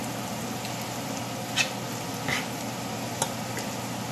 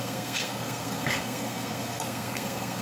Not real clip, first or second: second